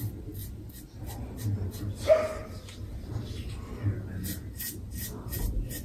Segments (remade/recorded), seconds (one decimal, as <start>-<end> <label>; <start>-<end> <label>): 0.0-5.8 recorded